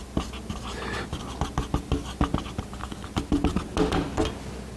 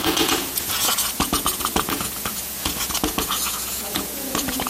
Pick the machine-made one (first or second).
second